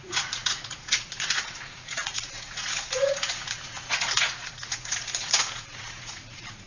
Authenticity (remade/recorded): remade